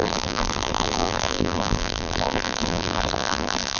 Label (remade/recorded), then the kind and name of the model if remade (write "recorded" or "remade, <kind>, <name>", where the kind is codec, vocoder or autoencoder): remade, vocoder, BigVGAN v2